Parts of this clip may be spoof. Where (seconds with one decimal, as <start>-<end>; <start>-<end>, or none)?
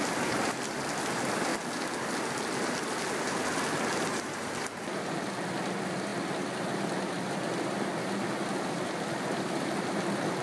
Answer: 0.0-1.5; 4.0-10.4